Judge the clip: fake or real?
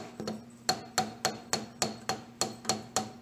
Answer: real